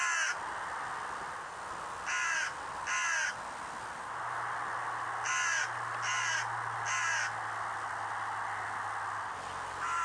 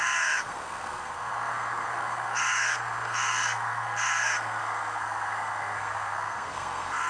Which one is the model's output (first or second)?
second